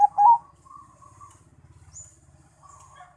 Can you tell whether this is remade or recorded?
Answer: recorded